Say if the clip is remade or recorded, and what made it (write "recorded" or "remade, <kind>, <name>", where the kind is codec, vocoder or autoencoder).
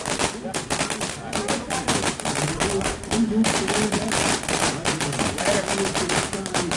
recorded